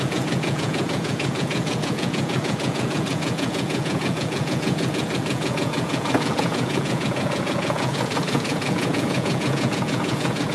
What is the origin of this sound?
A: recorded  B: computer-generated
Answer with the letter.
B